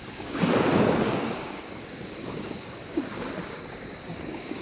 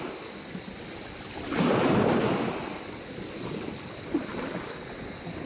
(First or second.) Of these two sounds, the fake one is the first